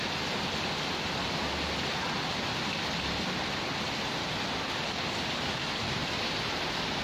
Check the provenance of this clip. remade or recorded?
recorded